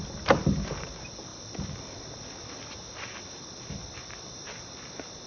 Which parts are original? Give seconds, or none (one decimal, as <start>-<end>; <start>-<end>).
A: 0.0-5.3